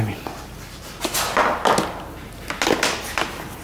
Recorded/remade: recorded